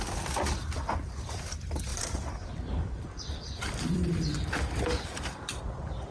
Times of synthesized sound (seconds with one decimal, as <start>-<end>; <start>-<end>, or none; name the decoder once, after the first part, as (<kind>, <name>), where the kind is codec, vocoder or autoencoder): 1.9-5.6 (vocoder, BigVGAN v2)